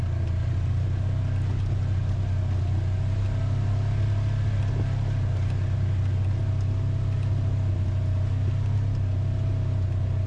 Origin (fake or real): real